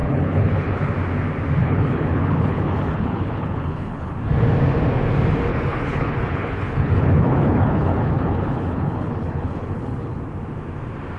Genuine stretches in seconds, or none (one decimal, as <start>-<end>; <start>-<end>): 0.9-1.6; 4.1-5.5; 10.2-11.2